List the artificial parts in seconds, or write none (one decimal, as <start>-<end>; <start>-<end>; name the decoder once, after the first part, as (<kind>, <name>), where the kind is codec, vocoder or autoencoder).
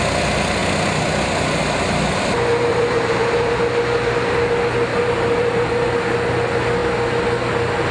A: 2.7-3.5 (vocoder, BigVGAN v2); 4.9-5.7